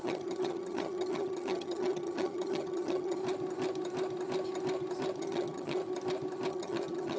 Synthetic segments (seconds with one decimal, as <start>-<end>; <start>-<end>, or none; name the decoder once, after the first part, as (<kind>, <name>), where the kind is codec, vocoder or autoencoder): 0.0-3.2 (vocoder, HiFi-GAN); 5.2-5.8; 6.5-7.2